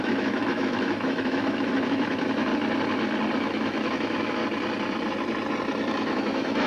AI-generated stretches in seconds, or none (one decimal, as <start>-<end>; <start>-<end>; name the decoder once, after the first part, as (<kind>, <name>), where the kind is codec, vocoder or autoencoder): 0.0-2.5 (autoencoder, DAC-VAE); 3.4-4.4; 5.9-6.7